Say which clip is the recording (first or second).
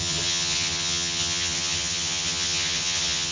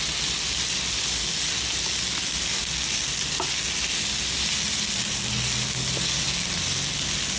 second